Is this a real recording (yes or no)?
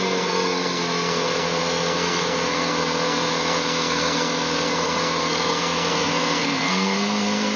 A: no